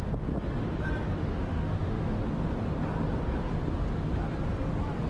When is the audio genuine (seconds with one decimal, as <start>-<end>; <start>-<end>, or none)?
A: 0.0-1.2; 2.1-5.1